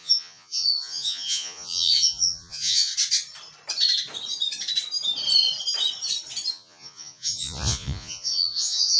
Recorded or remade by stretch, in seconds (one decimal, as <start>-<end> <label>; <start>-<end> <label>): 0.0-2.9 remade; 2.9-6.5 recorded; 6.5-9.0 remade